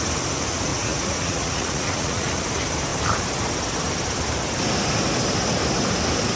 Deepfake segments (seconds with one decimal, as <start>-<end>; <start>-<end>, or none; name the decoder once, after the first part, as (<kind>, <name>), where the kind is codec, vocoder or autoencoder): 0.7-2.3 (vocoder, Vocos)